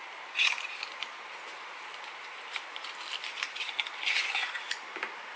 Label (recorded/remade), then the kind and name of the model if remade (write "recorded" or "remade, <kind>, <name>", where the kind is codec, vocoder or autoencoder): recorded